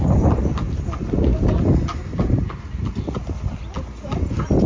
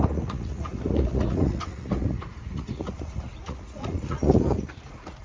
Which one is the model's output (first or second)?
second